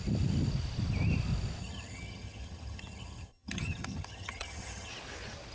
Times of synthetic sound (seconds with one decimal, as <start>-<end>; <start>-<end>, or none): 1.6-4.9